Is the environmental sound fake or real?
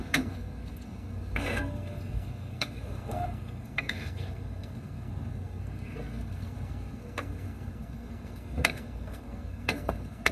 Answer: fake